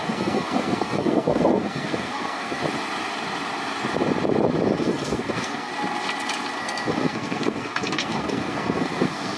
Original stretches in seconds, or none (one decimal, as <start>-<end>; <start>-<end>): 2.6-4.8; 5.7-6.6